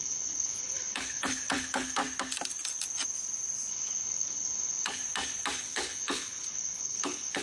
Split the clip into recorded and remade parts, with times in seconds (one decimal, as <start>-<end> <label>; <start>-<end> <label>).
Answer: 0.0-2.0 remade; 2.0-3.7 recorded; 3.7-5.0 remade; 5.0-5.6 recorded; 5.6-7.4 remade